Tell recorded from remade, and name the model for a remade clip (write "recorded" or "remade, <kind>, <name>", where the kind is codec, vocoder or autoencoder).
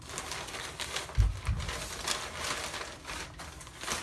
recorded